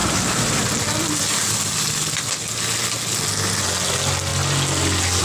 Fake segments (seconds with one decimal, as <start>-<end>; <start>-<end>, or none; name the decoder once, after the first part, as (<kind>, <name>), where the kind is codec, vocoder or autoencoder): none